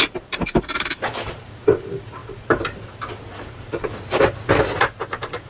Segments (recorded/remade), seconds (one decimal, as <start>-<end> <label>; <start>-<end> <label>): 0.0-3.9 remade; 3.9-4.8 recorded; 4.8-5.5 remade